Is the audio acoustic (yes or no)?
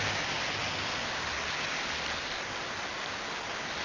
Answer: yes